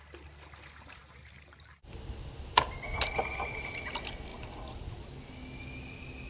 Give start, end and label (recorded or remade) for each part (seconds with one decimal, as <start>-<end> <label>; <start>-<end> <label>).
0.0-6.3 recorded